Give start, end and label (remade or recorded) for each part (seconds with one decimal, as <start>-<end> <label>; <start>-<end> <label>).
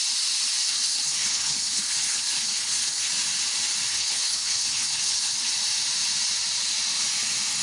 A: 0.0-0.6 recorded; 0.6-3.1 remade; 3.1-3.9 recorded; 3.9-5.5 remade; 5.5-7.6 recorded